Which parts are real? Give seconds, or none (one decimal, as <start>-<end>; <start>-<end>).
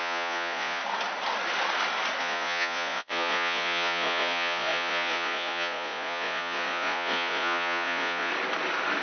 0.8-2.2; 8.3-9.0